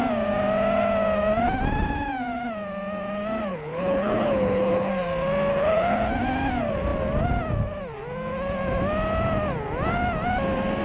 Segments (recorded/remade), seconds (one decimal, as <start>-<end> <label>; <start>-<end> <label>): 0.0-3.5 recorded; 3.5-4.9 remade; 4.9-5.5 recorded; 5.5-6.1 remade; 6.1-10.8 recorded